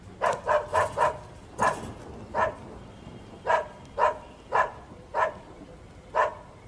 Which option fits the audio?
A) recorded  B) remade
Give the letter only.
A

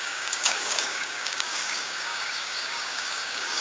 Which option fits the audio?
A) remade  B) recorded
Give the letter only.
A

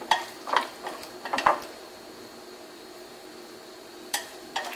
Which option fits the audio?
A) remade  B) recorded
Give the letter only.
A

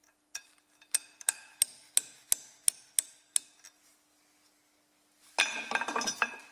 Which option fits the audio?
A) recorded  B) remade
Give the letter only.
A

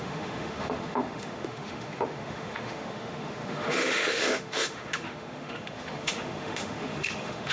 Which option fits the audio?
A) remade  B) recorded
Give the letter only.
A